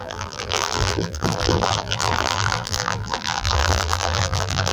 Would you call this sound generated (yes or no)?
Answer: yes